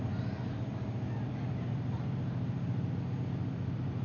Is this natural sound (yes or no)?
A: yes